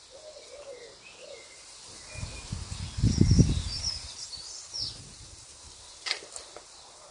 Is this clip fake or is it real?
real